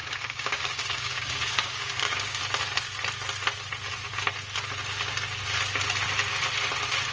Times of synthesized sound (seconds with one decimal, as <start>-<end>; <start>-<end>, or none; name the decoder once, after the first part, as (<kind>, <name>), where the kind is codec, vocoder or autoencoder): 0.0-2.4 (codec, DAC)